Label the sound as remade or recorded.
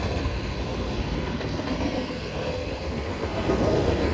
remade